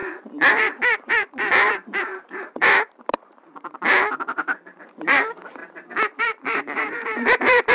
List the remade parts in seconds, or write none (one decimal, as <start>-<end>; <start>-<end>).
0.5-5.6; 6.2-7.7